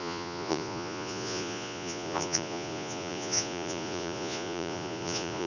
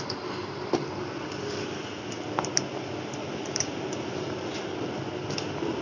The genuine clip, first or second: second